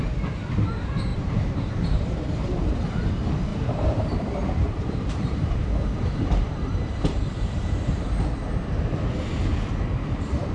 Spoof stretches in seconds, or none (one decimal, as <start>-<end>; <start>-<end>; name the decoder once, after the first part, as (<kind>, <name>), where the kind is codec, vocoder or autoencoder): 1.1-2.9 (vocoder, BigVGAN v2); 3.5-8.2